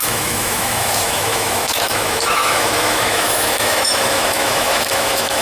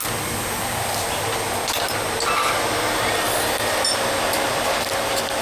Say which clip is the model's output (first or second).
first